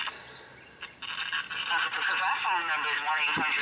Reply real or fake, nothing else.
real